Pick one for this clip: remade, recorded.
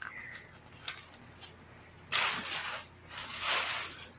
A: recorded